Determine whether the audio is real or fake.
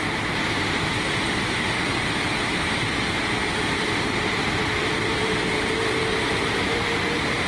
fake